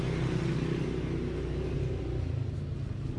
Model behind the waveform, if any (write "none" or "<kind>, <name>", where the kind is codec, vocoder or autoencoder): none